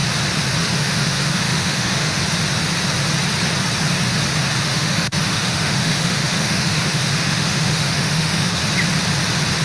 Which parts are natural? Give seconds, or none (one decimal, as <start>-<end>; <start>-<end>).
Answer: 0.0-0.6; 2.2-4.6; 8.6-9.6

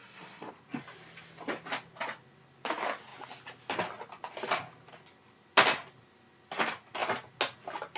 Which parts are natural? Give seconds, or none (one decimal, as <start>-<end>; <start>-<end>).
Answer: 0.5-8.0